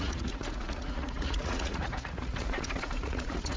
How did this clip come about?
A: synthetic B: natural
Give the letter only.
A